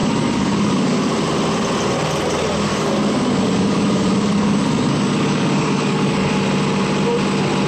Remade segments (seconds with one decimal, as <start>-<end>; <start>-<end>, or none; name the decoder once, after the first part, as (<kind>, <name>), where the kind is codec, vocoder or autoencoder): 0.0-1.1 (codec, DAC); 2.7-6.3